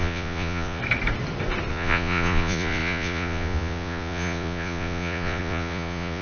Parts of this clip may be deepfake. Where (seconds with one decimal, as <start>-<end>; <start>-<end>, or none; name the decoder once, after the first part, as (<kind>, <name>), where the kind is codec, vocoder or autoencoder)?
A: 0.0-0.8 (vocoder, Vocos); 1.7-6.2